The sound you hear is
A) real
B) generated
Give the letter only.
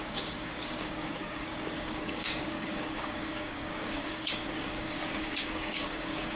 B